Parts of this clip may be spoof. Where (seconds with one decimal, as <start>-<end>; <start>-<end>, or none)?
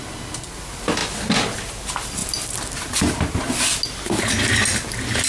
none